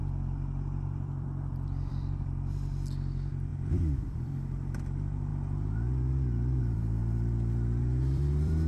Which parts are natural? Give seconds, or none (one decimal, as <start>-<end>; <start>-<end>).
3.5-4.0; 5.3-6.6; 7.0-7.8